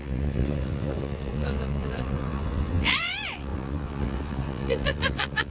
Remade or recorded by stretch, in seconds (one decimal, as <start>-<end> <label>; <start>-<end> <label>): 0.0-5.5 remade

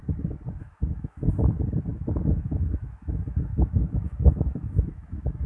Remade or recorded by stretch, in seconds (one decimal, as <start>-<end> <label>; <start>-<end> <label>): 0.0-0.6 recorded; 0.6-1.3 remade; 1.3-1.9 recorded; 1.9-5.5 remade

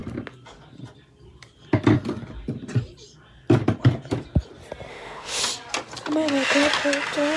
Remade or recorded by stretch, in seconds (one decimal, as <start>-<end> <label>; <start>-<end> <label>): 0.0-4.9 recorded; 4.9-5.4 remade; 5.4-7.4 recorded

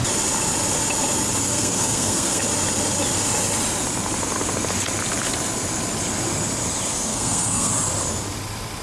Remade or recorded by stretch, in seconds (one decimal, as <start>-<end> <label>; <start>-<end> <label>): 0.0-1.4 recorded; 1.4-2.4 remade; 2.4-7.1 recorded; 7.1-7.7 remade; 7.7-8.8 recorded

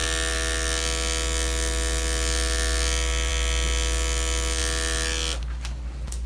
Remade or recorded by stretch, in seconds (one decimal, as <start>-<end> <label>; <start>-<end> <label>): 0.0-6.3 recorded

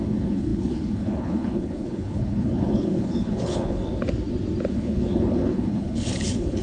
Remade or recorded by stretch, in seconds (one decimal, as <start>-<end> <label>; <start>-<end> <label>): 0.0-3.8 remade; 3.8-4.7 recorded; 4.7-6.6 remade

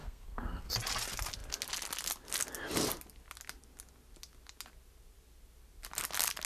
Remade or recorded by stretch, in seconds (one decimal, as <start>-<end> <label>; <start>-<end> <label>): 0.0-0.7 remade; 0.7-6.5 recorded

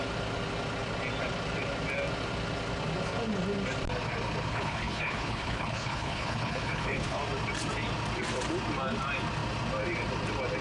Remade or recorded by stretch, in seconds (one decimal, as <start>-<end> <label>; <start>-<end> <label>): 0.0-4.5 recorded; 4.5-7.2 remade; 7.2-10.6 recorded